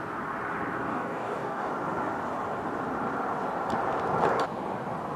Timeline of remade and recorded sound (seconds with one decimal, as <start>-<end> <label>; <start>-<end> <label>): 0.0-0.9 recorded; 0.9-1.7 remade; 1.7-5.2 recorded